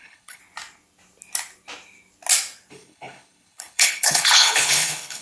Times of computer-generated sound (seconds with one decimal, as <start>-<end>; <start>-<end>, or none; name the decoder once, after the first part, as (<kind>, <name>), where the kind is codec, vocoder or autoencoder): 0.0-0.4 (codec, HILCodec); 2.7-5.2